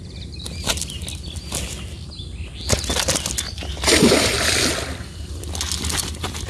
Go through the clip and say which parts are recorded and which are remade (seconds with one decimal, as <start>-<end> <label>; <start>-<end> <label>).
0.0-6.5 recorded